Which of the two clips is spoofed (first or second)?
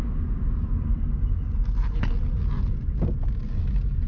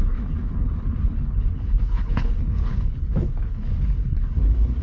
second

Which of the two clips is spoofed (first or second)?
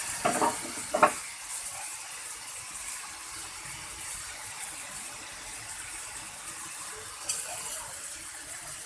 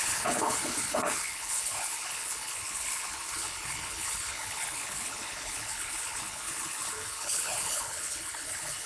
second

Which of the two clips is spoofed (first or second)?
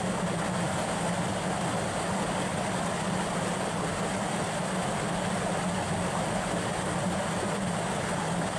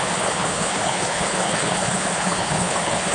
second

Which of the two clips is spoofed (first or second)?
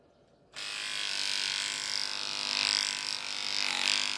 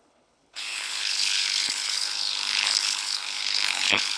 second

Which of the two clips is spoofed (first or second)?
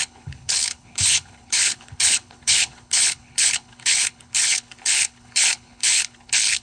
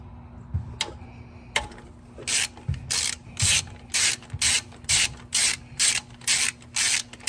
first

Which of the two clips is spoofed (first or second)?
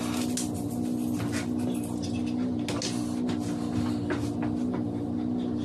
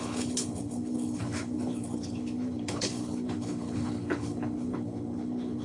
second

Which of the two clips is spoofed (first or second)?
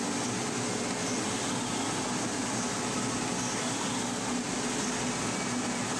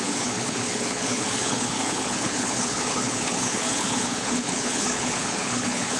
second